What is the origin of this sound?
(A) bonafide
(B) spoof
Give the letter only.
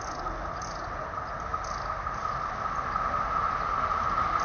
A